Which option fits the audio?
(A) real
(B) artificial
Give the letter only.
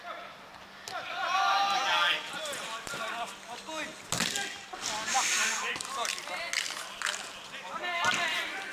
A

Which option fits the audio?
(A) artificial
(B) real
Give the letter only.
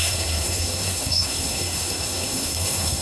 A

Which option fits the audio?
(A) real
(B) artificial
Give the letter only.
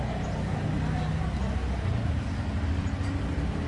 A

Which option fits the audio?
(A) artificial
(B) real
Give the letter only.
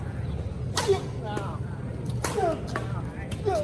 B